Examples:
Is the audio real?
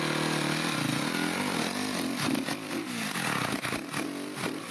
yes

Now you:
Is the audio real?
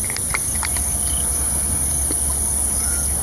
yes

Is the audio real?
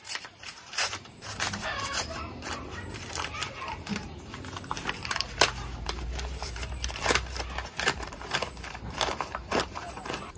no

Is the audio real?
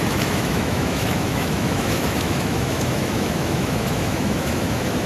no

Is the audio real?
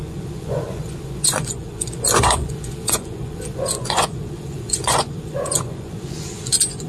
no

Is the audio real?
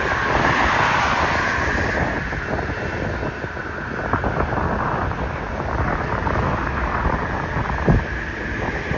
yes